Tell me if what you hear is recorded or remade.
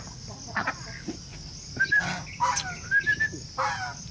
recorded